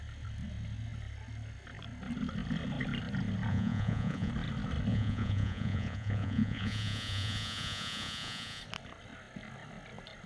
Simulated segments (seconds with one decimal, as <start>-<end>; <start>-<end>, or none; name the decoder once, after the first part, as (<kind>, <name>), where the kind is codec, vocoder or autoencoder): 3.5-4.3 (vocoder, Vocos); 4.9-8.6